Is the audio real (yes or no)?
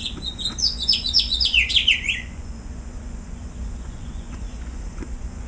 no